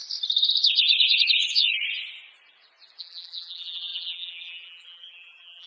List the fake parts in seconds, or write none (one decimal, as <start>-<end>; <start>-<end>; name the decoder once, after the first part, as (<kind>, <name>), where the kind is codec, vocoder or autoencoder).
3.0-5.7 (vocoder, BigVGAN v2)